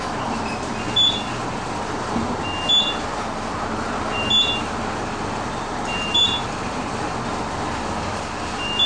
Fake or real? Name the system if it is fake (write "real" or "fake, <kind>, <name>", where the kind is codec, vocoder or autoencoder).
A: fake, vocoder, BigVGAN v2